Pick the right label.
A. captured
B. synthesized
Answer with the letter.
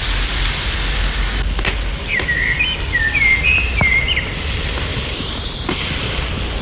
A